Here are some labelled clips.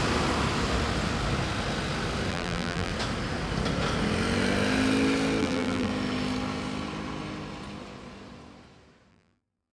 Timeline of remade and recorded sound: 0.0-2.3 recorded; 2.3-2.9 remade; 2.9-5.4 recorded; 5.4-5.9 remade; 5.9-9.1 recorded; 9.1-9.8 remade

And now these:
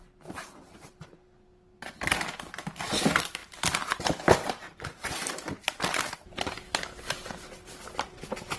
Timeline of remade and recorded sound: 0.0-3.4 recorded; 3.4-6.3 remade; 6.3-8.6 recorded

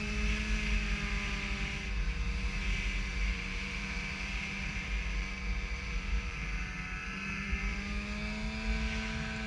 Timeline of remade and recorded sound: 0.0-3.1 recorded; 3.1-6.6 remade; 6.6-7.0 recorded; 7.0-7.9 remade; 7.9-9.5 recorded

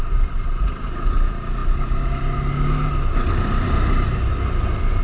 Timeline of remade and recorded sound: 0.0-5.0 recorded

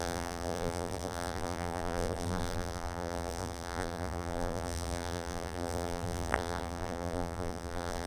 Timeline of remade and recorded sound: 0.0-8.1 remade

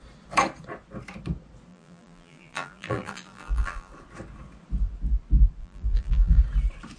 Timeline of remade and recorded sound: 0.0-1.7 recorded; 1.7-3.9 remade; 3.9-5.6 recorded; 5.6-6.4 remade; 6.4-7.0 recorded

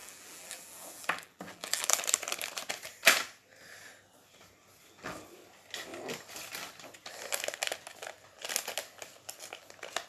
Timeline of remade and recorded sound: 0.0-2.0 remade; 2.0-10.1 recorded

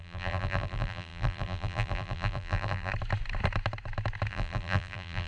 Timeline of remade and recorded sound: 0.0-2.9 remade; 2.9-4.3 recorded; 4.3-5.3 remade